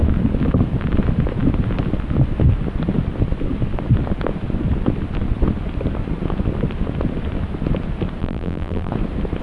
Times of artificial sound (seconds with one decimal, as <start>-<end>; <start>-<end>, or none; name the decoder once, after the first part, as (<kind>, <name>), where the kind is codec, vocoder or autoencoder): 8.2-8.9 (vocoder, BigVGAN v2)